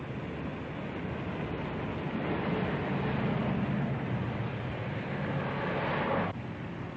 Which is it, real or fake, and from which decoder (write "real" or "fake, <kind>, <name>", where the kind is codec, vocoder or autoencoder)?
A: real